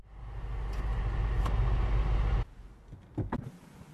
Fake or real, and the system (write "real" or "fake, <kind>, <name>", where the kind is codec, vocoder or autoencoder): real